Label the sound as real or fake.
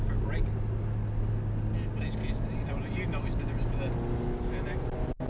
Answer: real